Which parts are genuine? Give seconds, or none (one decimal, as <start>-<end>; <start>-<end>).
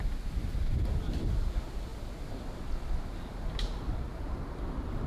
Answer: 0.0-0.5; 1.1-5.1